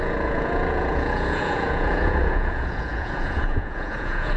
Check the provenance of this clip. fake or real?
fake